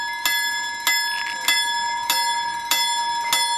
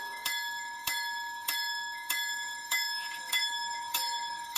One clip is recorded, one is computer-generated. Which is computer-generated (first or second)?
second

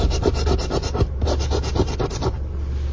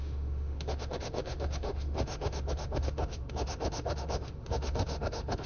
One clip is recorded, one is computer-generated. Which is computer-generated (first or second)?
second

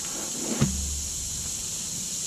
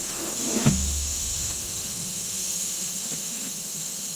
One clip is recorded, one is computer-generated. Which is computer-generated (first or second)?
second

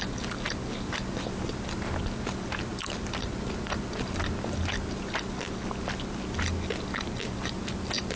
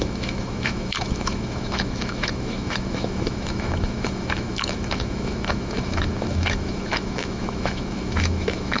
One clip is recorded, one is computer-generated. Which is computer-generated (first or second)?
second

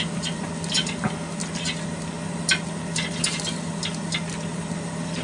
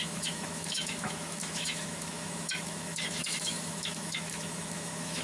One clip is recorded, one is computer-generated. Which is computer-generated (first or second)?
second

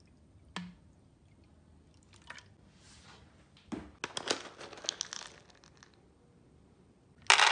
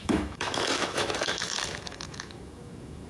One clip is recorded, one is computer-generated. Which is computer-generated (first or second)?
second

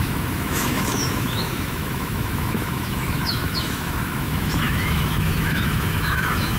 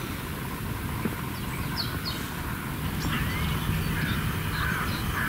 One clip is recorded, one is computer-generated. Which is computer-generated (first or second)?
first